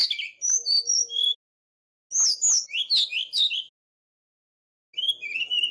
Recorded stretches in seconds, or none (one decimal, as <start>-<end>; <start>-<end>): 0.0-5.7

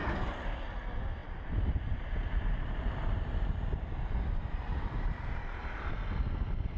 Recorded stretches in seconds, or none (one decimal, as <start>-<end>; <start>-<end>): 0.0-1.2; 5.3-6.8

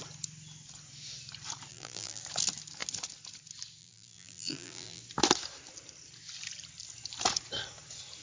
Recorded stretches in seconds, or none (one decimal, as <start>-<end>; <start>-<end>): 0.0-1.7; 2.2-3.8; 5.0-8.2

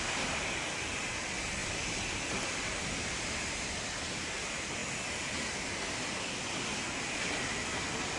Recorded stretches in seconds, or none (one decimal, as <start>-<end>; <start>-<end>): 0.0-1.6; 3.7-8.2

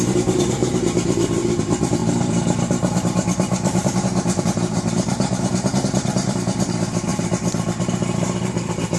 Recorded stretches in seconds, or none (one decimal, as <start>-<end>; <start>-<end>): none

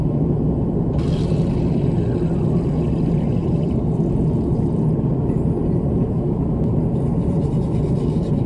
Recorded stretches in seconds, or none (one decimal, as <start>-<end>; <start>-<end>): 0.0-3.4; 3.9-5.6; 7.5-8.5

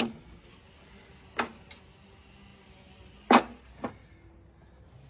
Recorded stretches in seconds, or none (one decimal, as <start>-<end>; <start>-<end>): 0.0-5.1

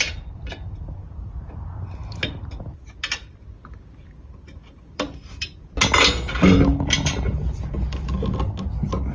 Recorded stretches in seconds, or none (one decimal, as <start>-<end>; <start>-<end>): 0.0-6.7; 8.1-9.1